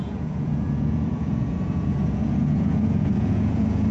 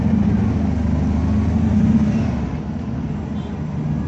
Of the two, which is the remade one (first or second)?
first